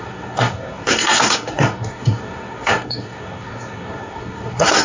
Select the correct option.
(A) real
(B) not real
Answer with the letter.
B